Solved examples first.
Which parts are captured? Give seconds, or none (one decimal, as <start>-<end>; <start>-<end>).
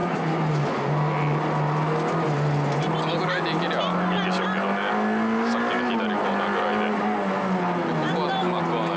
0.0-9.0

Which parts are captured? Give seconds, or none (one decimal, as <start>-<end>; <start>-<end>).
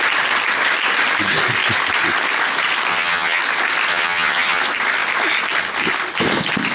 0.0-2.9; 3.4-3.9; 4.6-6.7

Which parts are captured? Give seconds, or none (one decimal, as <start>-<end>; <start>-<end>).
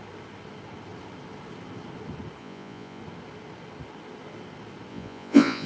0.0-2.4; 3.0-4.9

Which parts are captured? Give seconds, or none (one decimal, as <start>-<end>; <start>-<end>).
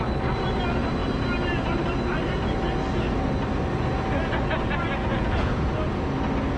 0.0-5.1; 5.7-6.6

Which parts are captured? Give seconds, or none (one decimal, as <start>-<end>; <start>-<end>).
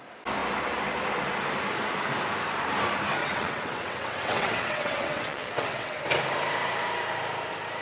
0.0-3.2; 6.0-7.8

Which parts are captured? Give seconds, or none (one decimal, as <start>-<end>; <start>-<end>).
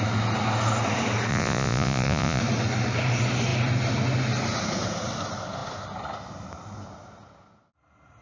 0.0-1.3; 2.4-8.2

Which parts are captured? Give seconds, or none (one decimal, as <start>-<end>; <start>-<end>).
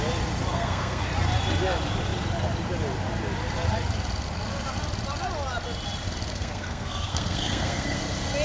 0.0-0.5; 1.0-6.3; 8.0-8.4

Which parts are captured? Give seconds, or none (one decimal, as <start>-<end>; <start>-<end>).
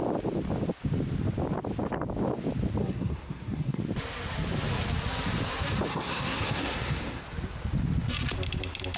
0.0-2.8; 3.8-5.9; 7.2-9.0